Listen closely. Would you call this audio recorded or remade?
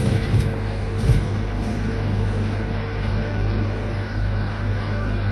remade